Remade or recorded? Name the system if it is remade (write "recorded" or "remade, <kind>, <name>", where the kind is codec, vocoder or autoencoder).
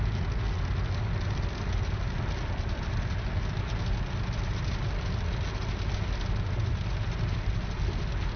recorded